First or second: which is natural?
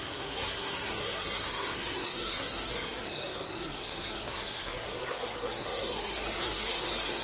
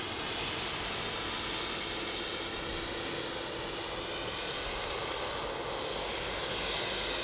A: second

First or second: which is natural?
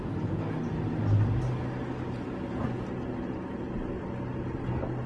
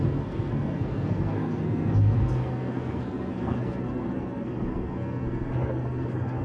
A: first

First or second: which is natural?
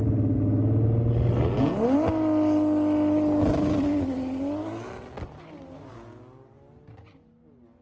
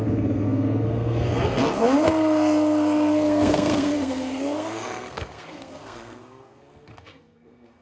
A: first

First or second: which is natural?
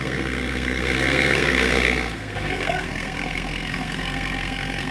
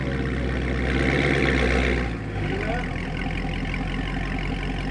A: second